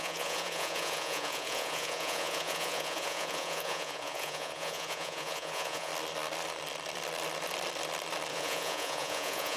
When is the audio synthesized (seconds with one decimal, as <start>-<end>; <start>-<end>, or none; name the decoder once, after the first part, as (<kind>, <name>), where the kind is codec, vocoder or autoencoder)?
0.0-5.9 (vocoder, Vocos); 8.3-9.6